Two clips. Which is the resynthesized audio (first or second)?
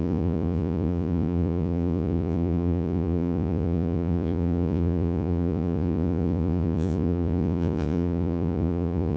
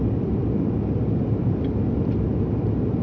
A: first